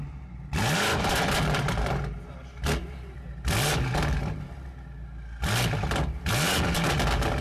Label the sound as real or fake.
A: real